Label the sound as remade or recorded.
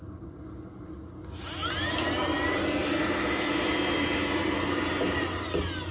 recorded